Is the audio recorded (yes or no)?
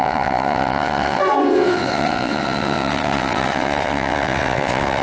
no